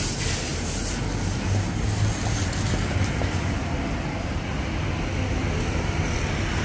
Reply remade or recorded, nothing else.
recorded